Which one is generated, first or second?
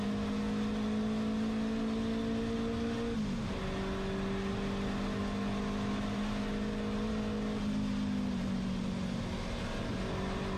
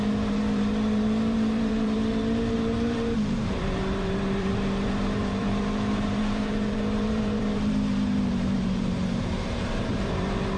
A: second